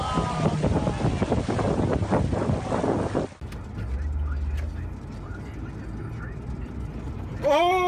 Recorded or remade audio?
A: recorded